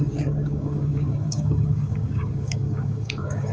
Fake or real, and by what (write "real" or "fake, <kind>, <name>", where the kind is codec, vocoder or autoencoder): fake, codec, DAC